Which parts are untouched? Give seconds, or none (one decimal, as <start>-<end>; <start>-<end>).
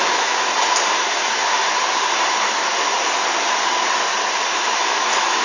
0.5-1.1; 1.6-2.3; 2.9-4.5